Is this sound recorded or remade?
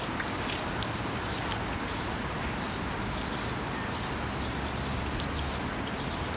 recorded